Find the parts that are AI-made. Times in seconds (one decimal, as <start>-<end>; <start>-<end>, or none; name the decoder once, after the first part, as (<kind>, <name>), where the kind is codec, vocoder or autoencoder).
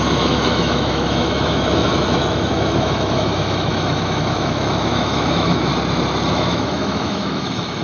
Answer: 0.0-5.7 (autoencoder, DAC-VAE); 6.3-7.8